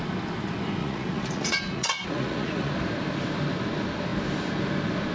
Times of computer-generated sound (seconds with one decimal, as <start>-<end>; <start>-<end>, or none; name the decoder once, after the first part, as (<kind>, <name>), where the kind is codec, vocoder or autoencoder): 0.8-2.7 (vocoder, Vocos)